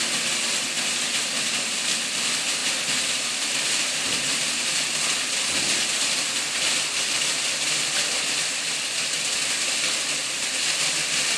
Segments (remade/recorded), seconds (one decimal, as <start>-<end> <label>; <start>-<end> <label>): 0.0-11.4 recorded